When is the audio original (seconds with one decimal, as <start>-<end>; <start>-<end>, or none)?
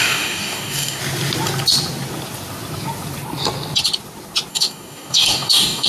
1.0-4.5